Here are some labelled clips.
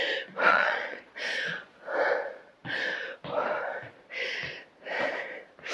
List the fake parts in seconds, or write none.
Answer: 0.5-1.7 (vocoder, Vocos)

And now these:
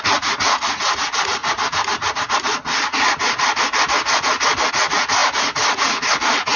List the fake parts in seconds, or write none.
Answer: 0.0-1.4 (vocoder, Vocos); 4.7-6.6